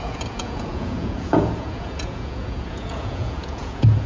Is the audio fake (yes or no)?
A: yes